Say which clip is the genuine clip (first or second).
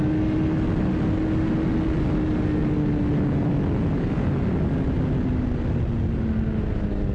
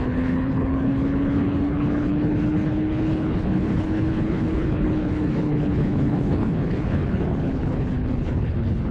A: first